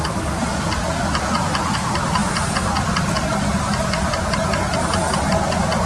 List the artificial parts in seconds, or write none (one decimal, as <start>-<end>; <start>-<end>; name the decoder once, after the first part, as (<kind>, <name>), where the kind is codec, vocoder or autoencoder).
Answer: none